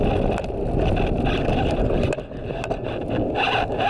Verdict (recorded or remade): recorded